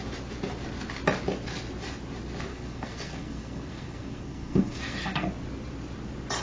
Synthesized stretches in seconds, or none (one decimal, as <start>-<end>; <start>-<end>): 2.5-5.3